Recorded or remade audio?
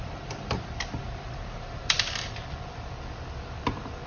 remade